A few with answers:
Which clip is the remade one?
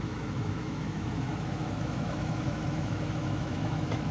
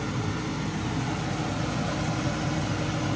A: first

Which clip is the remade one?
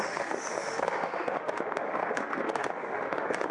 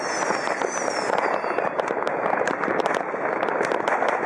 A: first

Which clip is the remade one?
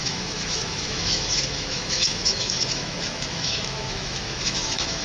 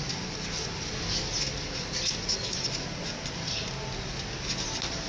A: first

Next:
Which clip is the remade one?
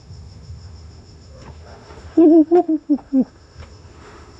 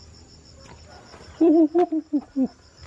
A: first